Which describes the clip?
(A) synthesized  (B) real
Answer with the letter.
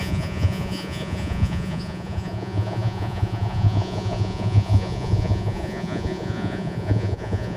A